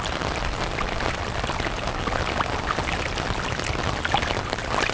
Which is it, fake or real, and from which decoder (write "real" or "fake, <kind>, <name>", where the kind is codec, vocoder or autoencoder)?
real